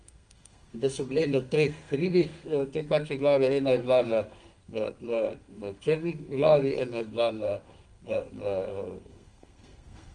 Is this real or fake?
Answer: fake